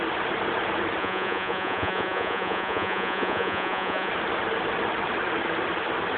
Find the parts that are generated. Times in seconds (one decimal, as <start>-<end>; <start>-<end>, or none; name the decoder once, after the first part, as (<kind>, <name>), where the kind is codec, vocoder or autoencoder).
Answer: 1.0-4.1 (vocoder, Vocos)